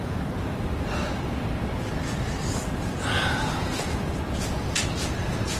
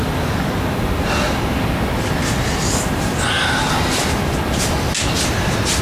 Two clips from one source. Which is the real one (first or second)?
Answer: second